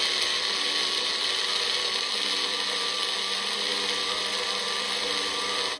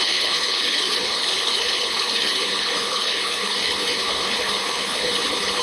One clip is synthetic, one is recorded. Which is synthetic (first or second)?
second